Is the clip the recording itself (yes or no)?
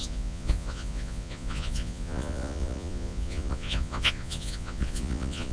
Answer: no